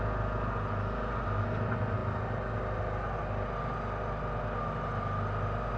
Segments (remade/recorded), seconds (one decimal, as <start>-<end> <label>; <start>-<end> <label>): 0.0-5.8 recorded